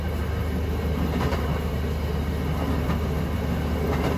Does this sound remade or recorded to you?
recorded